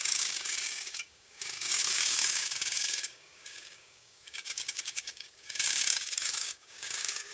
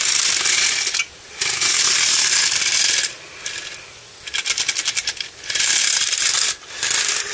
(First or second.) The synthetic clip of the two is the first